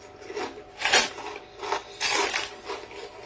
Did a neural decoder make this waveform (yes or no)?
no